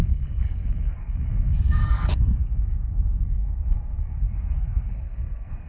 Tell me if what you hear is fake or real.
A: fake